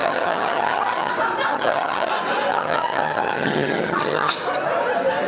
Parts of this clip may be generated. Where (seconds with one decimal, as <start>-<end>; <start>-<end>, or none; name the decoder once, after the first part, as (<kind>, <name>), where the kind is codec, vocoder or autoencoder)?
0.0-1.1 (vocoder, HiFi-GAN); 1.5-2.1; 2.5-4.3